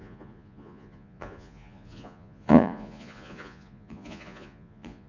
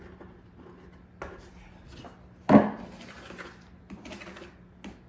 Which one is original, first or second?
second